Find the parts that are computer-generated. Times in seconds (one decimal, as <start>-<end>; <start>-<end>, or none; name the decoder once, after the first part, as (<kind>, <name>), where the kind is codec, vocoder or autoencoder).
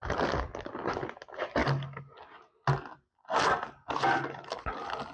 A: none